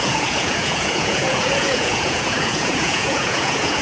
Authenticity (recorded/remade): remade